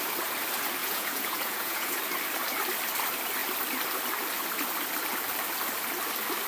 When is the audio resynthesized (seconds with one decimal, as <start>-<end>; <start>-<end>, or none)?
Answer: 0.8-2.0